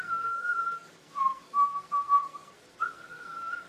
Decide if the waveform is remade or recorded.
remade